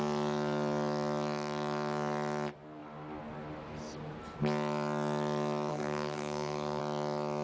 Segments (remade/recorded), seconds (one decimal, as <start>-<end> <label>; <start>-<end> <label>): 0.0-5.7 recorded; 5.7-6.8 remade; 6.8-7.4 recorded